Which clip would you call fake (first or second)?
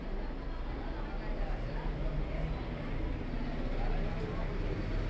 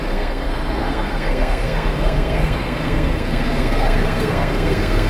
second